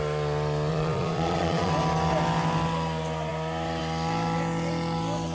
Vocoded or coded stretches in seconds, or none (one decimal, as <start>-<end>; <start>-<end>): 0.7-1.7

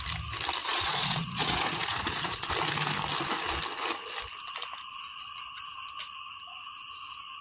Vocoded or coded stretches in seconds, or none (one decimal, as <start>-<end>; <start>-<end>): 0.6-2.5; 5.1-5.6

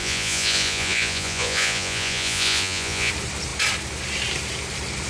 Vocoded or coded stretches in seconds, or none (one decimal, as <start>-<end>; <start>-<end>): 0.0-3.1

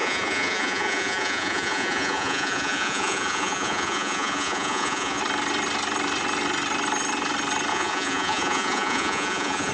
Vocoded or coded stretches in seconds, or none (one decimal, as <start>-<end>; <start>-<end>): 0.0-5.2; 7.7-9.7

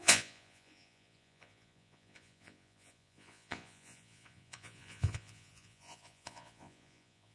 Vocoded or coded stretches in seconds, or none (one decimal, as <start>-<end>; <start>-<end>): 0.0-7.3

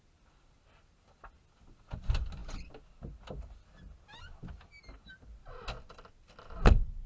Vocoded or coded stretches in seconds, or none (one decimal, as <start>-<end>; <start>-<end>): none